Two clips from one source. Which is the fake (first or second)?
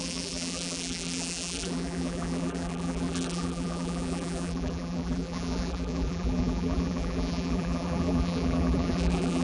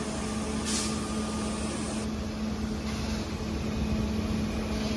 first